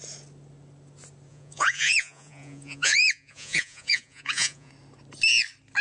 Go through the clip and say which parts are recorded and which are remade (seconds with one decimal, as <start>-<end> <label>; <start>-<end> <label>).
0.0-1.3 recorded; 1.3-4.7 remade; 4.7-5.8 recorded